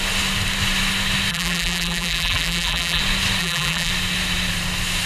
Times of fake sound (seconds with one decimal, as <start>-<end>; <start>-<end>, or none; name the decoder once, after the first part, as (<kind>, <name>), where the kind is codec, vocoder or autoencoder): 1.3-3.0 (vocoder, BigVGAN v2); 3.4-3.9